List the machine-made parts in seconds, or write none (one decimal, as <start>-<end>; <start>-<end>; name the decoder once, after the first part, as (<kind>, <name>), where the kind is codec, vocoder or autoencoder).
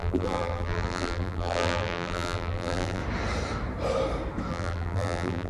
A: 0.0-3.0 (vocoder, BigVGAN v2); 4.5-5.5